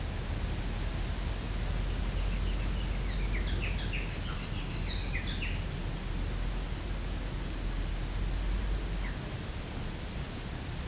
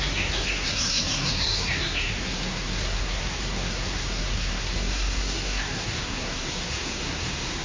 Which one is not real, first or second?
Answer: second